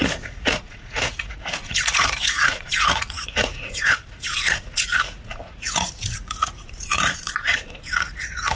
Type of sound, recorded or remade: remade